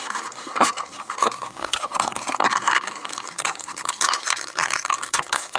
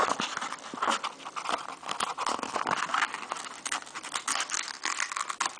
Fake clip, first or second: first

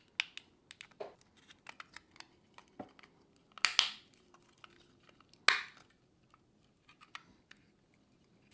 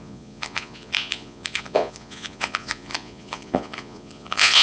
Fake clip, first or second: second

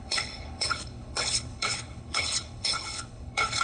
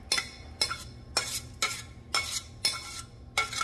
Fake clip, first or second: first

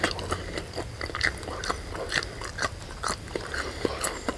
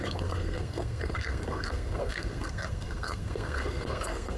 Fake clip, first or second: second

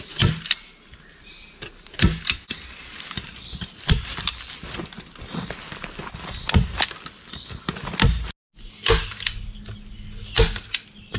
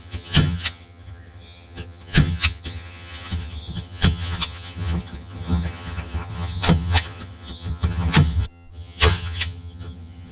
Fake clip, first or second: second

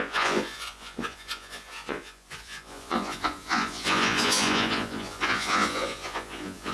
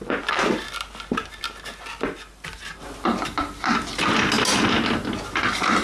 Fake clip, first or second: first